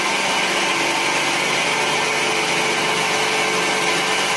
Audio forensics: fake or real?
real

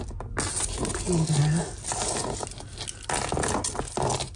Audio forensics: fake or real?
real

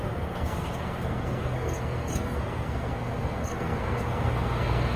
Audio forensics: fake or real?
fake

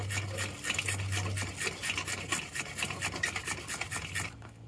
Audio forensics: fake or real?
real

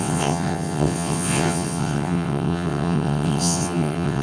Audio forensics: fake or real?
fake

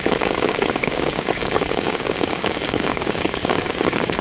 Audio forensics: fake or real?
fake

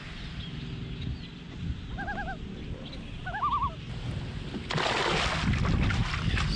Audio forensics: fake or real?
real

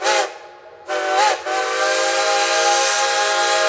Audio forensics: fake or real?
real